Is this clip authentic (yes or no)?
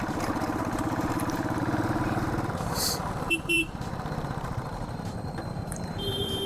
no